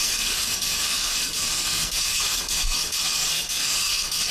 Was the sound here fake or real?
fake